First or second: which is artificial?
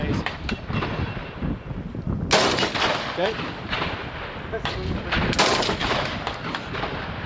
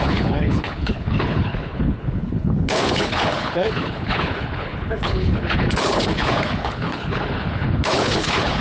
second